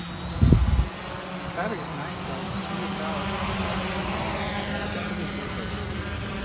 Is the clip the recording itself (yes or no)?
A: yes